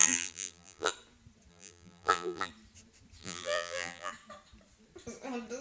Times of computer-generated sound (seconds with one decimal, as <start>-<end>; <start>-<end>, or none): 0.0-0.9; 1.5-2.5; 3.2-4.1